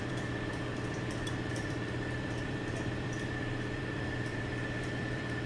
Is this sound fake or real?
fake